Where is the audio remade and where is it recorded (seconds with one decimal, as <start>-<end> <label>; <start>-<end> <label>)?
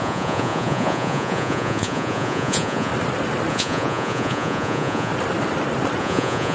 0.0-2.9 remade; 2.9-3.5 recorded; 3.5-5.1 remade; 5.1-6.0 recorded; 6.0-6.5 remade